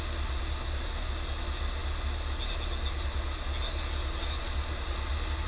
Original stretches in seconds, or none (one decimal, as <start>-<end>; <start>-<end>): 0.0-5.5